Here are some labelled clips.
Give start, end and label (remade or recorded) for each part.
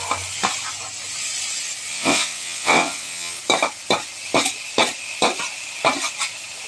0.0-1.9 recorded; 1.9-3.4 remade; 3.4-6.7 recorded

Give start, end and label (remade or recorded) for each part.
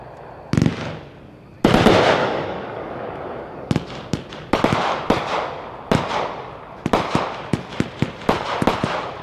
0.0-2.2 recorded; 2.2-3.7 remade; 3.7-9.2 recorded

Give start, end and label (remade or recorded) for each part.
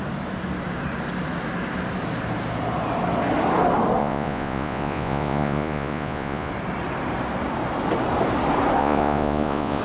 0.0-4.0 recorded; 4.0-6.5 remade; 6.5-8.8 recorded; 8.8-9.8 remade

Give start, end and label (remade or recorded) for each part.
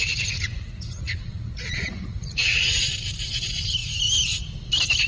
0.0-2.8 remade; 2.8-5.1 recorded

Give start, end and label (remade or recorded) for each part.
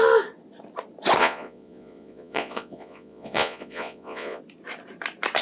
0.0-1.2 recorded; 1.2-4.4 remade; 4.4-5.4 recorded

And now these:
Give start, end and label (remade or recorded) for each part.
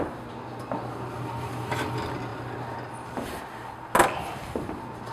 0.0-5.1 recorded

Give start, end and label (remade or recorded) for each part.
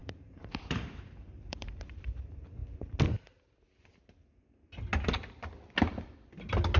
0.0-2.6 remade; 2.6-6.8 recorded